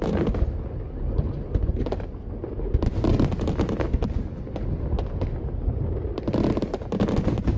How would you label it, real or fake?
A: real